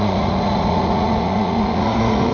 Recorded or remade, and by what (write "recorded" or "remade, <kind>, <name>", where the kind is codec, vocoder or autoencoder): remade, vocoder, Vocos